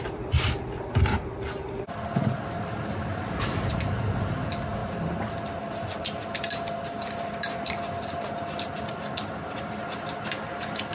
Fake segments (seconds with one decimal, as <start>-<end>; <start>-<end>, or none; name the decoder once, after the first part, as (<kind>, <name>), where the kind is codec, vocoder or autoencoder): none